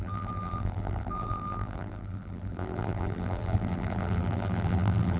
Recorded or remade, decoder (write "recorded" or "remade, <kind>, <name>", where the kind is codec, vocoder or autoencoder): remade, vocoder, BigVGAN v2